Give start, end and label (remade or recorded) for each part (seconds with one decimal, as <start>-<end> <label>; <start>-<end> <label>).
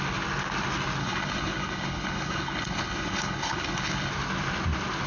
0.0-1.0 recorded; 1.0-4.1 remade; 4.1-5.1 recorded